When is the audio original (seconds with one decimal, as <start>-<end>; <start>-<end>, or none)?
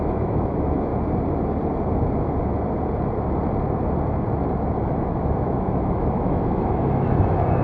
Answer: 0.9-4.8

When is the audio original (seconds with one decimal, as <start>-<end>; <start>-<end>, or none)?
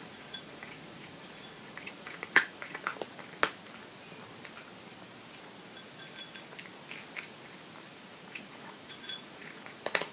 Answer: 2.9-7.9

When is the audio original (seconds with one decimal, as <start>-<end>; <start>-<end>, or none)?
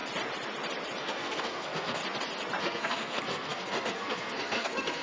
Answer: 0.0-1.0; 2.0-2.6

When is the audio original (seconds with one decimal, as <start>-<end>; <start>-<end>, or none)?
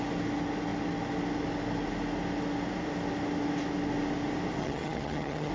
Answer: 0.0-4.6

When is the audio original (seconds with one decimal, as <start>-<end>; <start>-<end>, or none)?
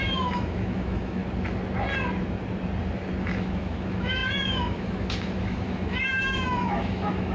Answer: 1.2-3.2